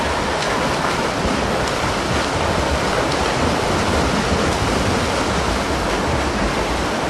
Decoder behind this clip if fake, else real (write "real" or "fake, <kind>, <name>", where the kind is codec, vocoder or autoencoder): real